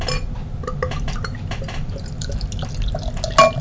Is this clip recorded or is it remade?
recorded